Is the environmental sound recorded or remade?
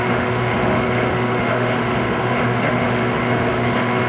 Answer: remade